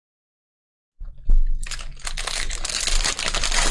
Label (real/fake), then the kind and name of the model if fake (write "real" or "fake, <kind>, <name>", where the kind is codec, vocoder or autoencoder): real